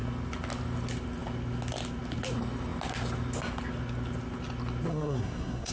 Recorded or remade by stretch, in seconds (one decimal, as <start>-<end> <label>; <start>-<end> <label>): 0.0-4.9 recorded; 4.9-5.7 remade